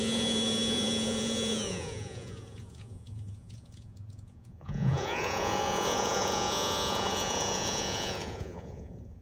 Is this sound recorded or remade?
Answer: remade